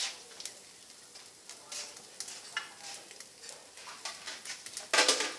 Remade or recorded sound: recorded